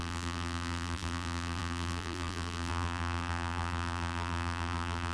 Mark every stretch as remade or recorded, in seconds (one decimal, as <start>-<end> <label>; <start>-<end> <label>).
0.0-5.1 remade